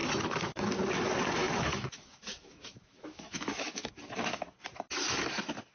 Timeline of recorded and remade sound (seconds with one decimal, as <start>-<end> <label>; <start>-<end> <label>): 0.0-0.7 remade; 0.7-1.4 recorded; 1.4-3.9 remade; 3.9-5.7 recorded